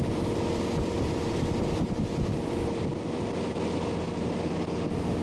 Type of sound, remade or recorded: recorded